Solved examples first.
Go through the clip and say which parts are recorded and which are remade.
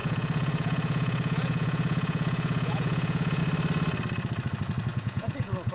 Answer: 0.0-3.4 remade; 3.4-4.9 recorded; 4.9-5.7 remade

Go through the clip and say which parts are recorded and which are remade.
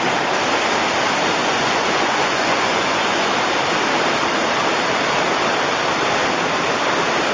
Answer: 0.0-1.4 recorded; 1.4-3.3 remade; 3.3-7.3 recorded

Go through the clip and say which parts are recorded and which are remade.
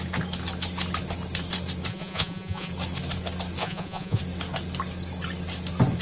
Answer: 0.0-1.9 recorded; 1.9-2.7 remade; 2.7-3.6 recorded; 3.6-4.2 remade; 4.2-6.0 recorded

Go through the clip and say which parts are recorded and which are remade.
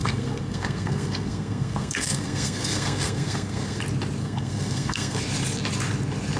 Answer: 0.0-3.8 remade; 3.8-4.2 recorded; 4.2-5.2 remade; 5.2-6.4 recorded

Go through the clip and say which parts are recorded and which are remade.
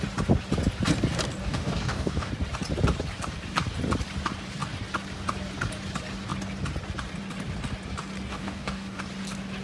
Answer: 0.0-1.4 recorded; 1.4-2.3 remade; 2.3-8.3 recorded; 8.3-9.0 remade; 9.0-9.6 recorded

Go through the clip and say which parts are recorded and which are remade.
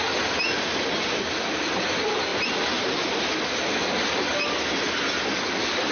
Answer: 0.0-5.9 recorded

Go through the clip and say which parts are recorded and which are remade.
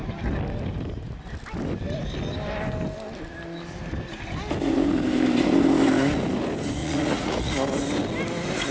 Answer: 0.0-6.8 recorded; 6.8-7.5 remade; 7.5-8.7 recorded